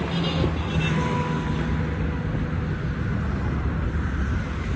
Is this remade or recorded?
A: recorded